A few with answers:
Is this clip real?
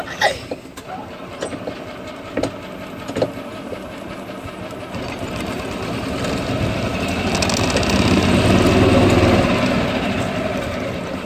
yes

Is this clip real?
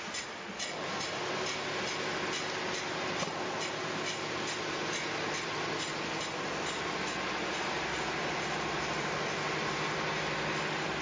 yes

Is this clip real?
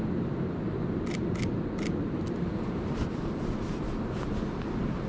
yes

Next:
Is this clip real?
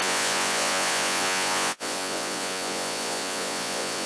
no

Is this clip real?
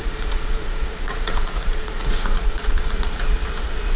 no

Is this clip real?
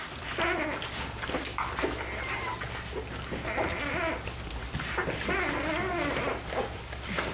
yes